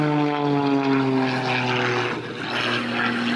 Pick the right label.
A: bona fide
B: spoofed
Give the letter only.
A